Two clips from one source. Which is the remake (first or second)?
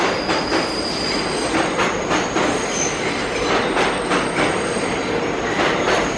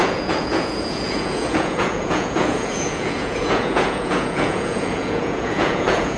second